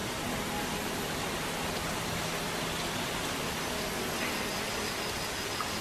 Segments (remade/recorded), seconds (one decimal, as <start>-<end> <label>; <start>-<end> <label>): 0.0-5.8 recorded